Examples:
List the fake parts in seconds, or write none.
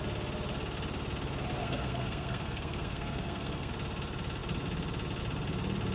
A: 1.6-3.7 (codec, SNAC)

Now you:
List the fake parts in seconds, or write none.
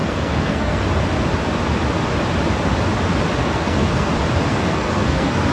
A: 0.0-0.8 (codec, SNAC); 3.4-4.1; 4.5-5.5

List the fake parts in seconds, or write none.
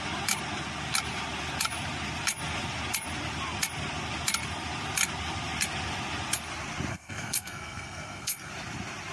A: 6.9-8.5 (codec, SNAC)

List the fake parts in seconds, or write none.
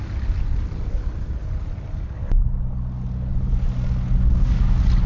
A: none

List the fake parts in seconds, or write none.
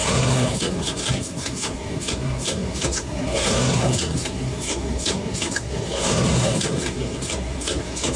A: 0.0-8.2 (codec, SNAC)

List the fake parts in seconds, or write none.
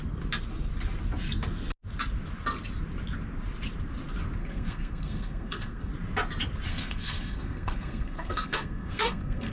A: 4.4-5.9 (codec, SNAC); 6.7-9.5